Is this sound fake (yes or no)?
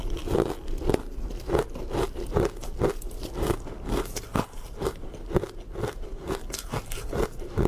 no